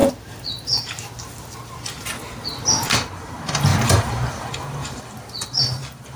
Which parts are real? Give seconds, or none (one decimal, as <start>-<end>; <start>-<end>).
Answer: 0.0-2.9

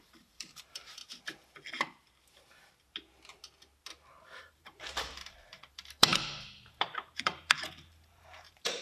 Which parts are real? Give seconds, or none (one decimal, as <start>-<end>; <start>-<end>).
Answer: 1.0-4.4; 6.1-6.7

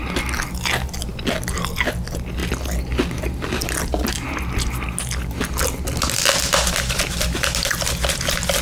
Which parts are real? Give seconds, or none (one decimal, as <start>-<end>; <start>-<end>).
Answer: 0.0-8.6

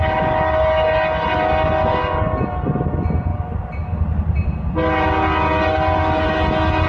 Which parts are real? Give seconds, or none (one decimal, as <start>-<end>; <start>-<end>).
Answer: 0.0-3.3; 4.2-6.9

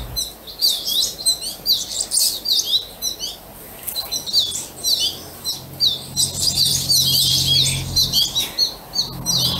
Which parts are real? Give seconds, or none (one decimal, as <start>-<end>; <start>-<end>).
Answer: 0.0-9.6